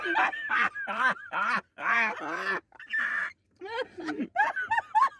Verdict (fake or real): fake